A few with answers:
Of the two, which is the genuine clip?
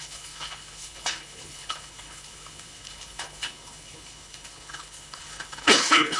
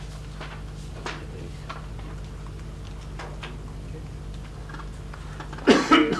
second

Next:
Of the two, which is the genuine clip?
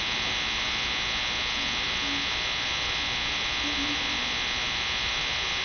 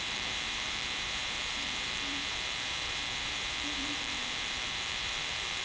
first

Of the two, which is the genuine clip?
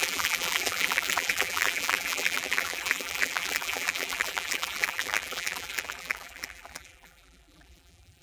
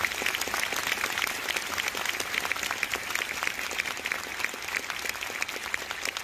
second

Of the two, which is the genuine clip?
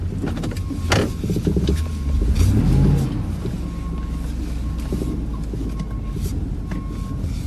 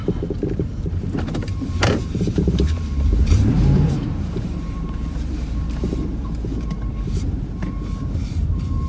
first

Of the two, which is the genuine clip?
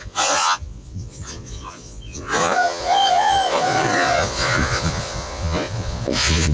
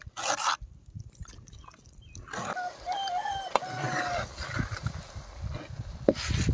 second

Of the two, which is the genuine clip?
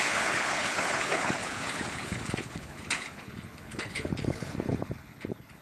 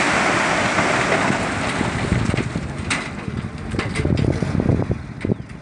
second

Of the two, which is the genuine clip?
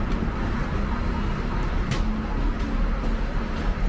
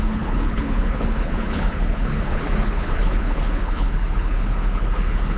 first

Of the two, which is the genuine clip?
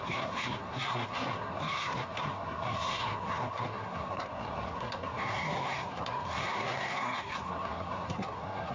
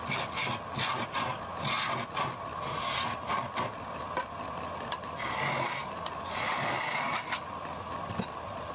second